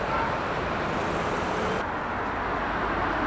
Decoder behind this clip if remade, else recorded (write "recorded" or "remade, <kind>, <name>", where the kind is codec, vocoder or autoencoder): recorded